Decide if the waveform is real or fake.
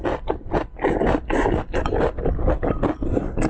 real